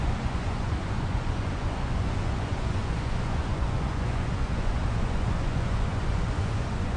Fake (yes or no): yes